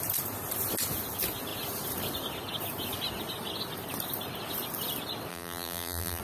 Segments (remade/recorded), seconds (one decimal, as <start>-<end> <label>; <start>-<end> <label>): 0.0-5.3 recorded; 5.3-6.2 remade